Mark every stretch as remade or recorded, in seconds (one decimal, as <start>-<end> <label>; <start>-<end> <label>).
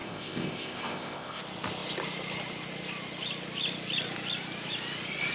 0.0-1.4 remade; 1.4-5.3 recorded